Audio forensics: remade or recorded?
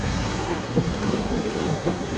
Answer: remade